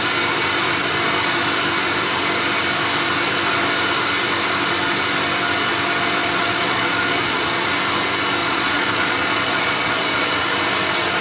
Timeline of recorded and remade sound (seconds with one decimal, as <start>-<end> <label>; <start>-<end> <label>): 0.0-6.2 recorded; 6.2-7.7 remade; 7.7-8.4 recorded; 8.4-10.4 remade; 10.4-11.2 recorded